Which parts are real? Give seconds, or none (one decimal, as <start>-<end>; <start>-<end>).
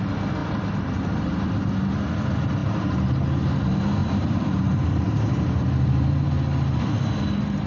0.0-0.4; 1.2-4.0; 6.3-7.7